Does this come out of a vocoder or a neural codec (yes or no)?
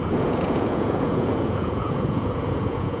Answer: yes